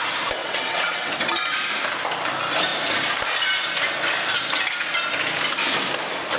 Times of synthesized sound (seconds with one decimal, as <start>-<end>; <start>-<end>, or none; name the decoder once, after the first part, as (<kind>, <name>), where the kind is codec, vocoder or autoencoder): 0.4-1.3 (vocoder, WaveNeXt)